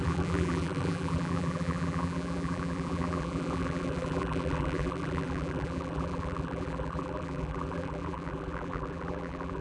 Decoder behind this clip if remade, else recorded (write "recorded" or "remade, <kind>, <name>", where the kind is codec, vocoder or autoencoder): remade, vocoder, BigVGAN v2